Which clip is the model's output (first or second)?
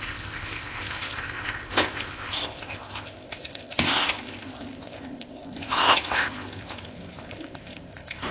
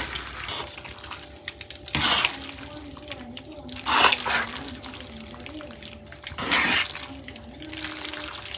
first